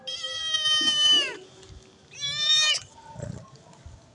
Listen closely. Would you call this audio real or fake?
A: real